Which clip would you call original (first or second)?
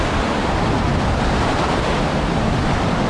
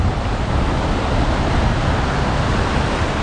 second